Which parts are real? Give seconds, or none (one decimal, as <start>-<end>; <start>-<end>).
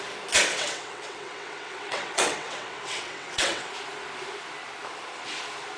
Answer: 0.0-0.5; 3.7-5.8